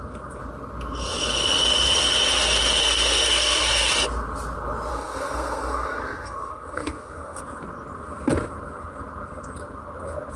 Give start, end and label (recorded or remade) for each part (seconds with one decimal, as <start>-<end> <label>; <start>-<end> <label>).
0.0-2.8 recorded; 2.8-3.9 remade; 3.9-4.9 recorded; 4.9-7.4 remade; 7.4-10.4 recorded